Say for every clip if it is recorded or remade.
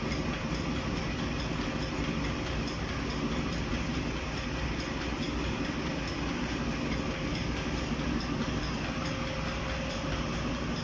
recorded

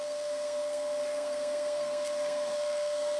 remade